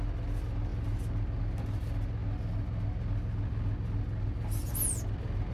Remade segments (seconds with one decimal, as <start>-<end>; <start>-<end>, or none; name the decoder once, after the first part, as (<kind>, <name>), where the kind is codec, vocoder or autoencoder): none